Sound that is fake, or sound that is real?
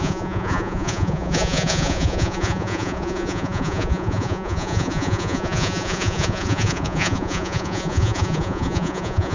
fake